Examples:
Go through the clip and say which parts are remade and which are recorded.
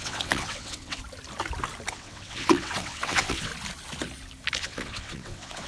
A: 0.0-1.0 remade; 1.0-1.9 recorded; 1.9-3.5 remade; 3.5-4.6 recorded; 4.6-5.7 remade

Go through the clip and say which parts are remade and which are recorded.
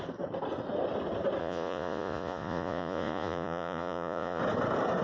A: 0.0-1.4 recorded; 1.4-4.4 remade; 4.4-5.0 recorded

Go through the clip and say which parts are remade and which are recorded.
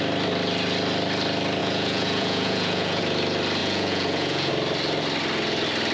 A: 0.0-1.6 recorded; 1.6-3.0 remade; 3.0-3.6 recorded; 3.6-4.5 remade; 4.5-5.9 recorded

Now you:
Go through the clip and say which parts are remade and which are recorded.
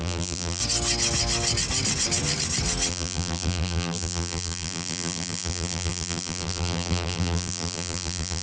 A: 0.0-0.6 remade; 0.6-2.9 recorded; 2.9-8.4 remade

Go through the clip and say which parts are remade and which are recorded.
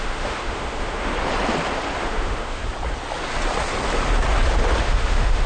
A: 0.0-1.1 remade; 1.1-2.0 recorded; 2.0-2.6 remade; 2.6-4.8 recorded; 4.8-5.5 remade